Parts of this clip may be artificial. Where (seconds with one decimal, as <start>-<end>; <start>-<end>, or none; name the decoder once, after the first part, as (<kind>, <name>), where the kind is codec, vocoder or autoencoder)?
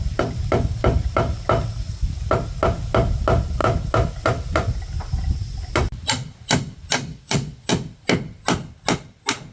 7.1-7.7 (vocoder, Vocos)